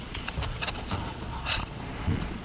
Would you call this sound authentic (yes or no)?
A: no